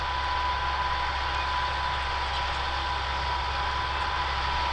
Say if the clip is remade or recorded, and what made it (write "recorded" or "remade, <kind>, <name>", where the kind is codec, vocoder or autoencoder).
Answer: recorded